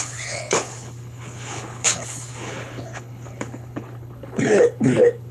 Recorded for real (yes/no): no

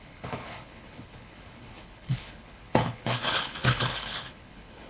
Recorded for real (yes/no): no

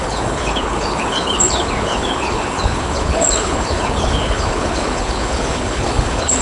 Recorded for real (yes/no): no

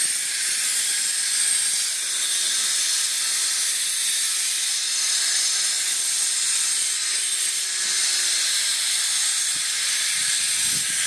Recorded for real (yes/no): yes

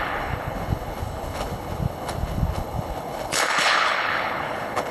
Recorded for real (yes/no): no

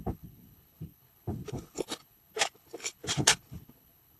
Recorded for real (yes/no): no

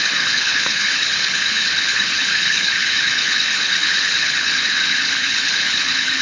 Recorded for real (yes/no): no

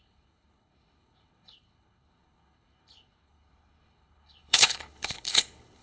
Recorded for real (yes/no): no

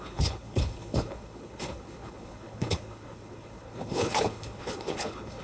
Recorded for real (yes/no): no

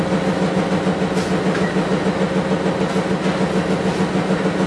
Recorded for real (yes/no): yes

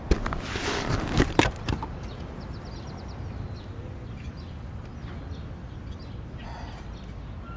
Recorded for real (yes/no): yes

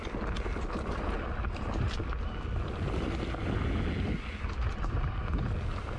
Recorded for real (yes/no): yes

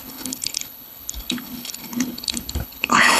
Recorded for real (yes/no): no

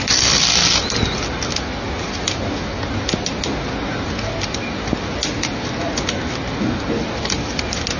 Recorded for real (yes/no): yes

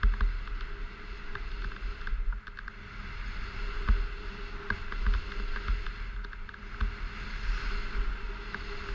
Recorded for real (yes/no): yes